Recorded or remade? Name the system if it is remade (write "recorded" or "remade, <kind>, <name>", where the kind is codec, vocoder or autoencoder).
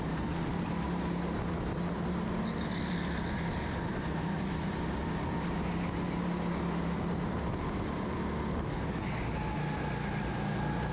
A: recorded